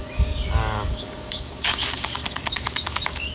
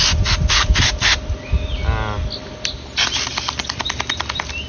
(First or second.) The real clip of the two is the second